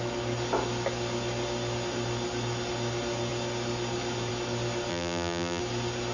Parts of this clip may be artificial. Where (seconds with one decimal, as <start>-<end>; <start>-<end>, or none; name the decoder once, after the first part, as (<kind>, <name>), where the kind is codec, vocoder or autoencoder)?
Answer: 4.9-5.6 (vocoder, BigVGAN v2)